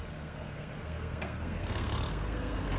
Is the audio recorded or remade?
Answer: remade